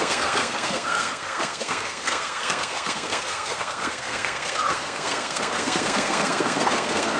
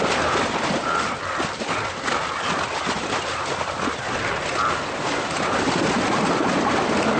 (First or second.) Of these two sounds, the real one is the second